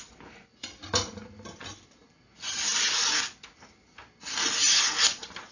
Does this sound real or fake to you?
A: real